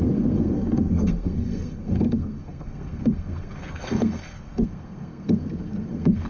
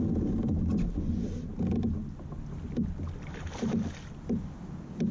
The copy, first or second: first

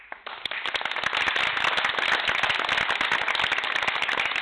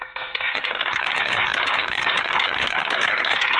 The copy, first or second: second